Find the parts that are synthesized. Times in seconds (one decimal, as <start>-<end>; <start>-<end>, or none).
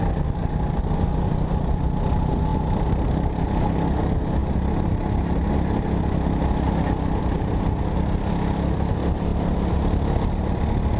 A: none